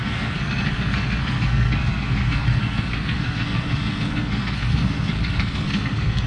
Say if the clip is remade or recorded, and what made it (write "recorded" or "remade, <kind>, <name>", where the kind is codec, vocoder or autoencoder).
remade, codec, SNAC